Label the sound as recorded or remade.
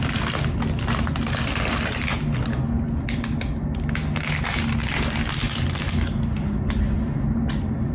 recorded